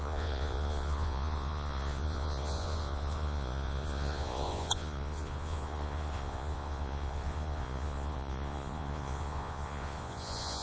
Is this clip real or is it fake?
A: fake